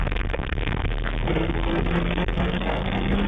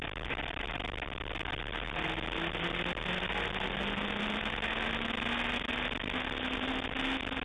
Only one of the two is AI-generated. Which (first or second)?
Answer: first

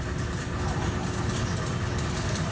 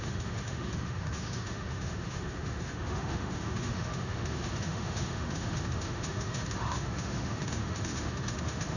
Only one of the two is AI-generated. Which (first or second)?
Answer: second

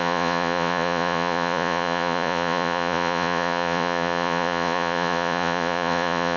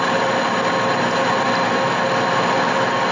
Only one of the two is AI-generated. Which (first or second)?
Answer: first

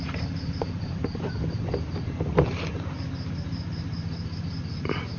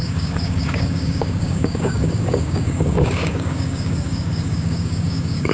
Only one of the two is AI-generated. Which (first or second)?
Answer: second